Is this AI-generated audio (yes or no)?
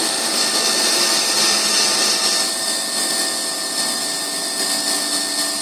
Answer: no